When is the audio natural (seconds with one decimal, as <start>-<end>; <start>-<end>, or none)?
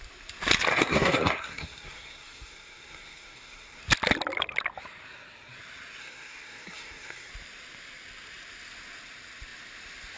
0.0-0.7; 3.8-6.0; 7.3-10.2